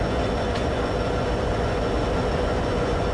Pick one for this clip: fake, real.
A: fake